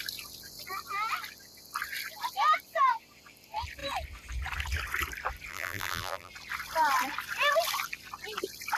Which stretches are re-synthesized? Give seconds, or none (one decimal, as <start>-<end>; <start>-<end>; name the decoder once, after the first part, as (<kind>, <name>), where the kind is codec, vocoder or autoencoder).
5.5-6.3 (vocoder, BigVGAN v2)